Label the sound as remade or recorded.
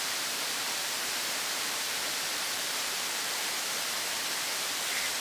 remade